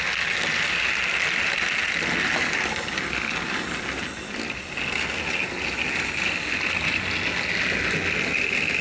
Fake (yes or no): no